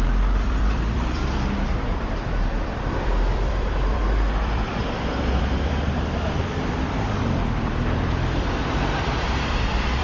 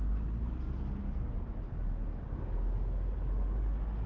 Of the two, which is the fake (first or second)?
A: first